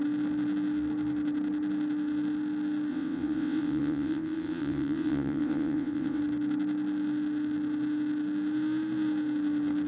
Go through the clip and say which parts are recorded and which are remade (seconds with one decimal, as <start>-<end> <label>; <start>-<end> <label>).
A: 0.0-2.9 recorded; 2.9-6.2 remade; 6.2-9.9 recorded